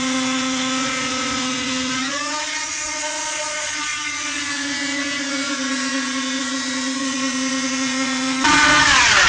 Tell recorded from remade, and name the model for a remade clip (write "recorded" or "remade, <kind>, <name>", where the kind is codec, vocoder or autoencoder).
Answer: remade, vocoder, Vocos